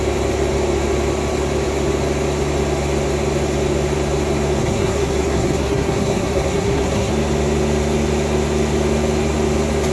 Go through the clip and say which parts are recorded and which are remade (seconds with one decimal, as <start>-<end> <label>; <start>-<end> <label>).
0.0-4.6 recorded; 4.6-7.1 remade; 7.1-9.9 recorded